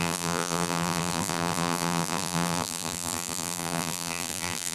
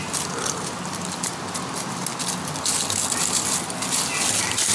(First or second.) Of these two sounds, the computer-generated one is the first